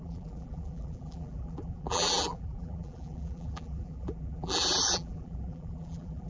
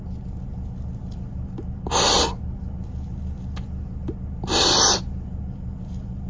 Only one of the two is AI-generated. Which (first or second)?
first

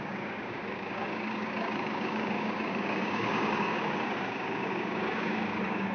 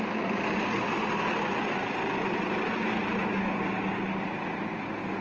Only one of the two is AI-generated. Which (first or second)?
first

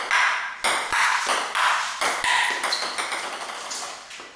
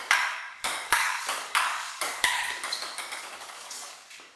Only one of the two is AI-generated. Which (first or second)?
second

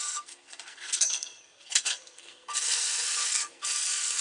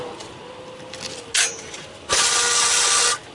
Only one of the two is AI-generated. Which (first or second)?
first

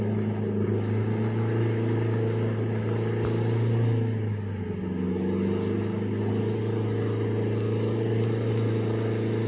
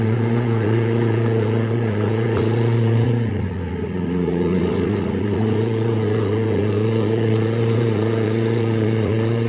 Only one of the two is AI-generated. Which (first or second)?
second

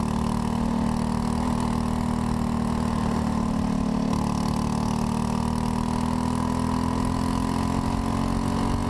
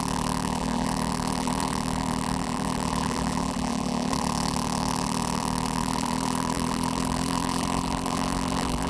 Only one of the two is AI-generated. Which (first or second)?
second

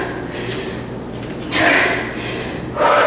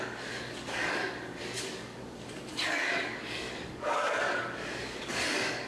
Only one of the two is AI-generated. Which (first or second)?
second